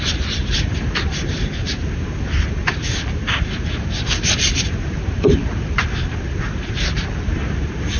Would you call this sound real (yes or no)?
no